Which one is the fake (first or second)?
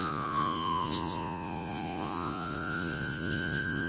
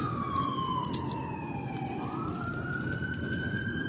first